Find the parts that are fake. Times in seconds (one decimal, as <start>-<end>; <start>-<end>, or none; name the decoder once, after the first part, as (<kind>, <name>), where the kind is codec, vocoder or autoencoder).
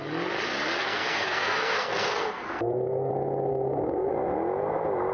0.8-3.1 (codec, SNAC); 3.5-4.1